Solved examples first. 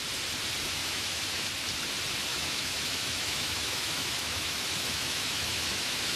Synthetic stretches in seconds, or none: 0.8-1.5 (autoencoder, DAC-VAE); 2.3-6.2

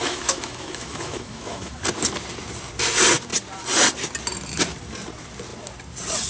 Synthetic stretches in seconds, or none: 0.0-1.8 (autoencoder, DAC-VAE)

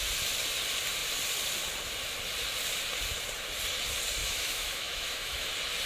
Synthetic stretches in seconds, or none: 4.2-5.5 (autoencoder, DAC-VAE)

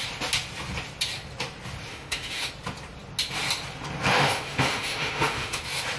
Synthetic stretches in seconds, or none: 1.9-2.5 (autoencoder, DAC-VAE); 4.1-5.6

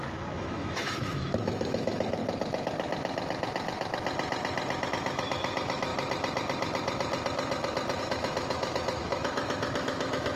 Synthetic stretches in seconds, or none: 0.0-2.2 (autoencoder, DAC-VAE); 4.9-5.9; 8.0-10.4

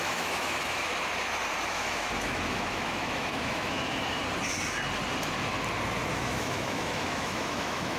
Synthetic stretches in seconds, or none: 0.0-0.9 (autoencoder, DAC-VAE); 1.7-4.2; 6.1-8.0

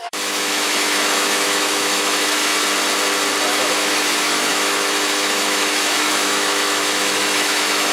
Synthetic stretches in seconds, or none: 0.0-2.5 (autoencoder, DAC-VAE); 3.5-7.9

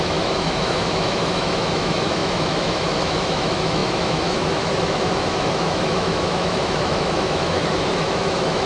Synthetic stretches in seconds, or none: 0.0-8.7 (autoencoder, DAC-VAE)